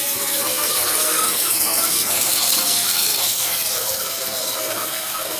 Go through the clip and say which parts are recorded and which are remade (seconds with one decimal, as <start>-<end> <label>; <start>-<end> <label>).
0.0-5.4 remade